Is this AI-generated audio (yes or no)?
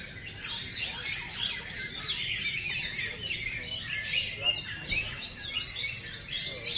no